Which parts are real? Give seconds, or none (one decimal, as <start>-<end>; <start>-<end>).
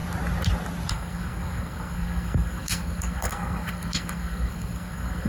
0.0-0.9